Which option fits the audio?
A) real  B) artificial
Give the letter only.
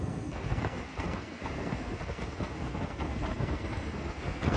B